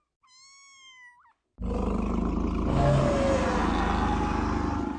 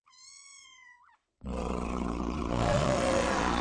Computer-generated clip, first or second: second